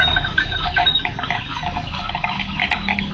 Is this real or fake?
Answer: fake